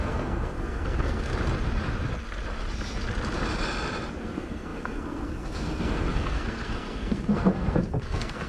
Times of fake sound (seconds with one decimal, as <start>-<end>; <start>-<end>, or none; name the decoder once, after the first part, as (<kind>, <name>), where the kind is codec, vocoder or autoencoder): 0.0-1.3 (codec, SNAC); 4.1-8.5